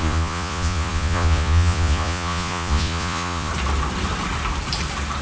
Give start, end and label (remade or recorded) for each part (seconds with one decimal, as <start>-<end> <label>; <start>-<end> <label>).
0.0-3.5 remade; 3.5-5.2 recorded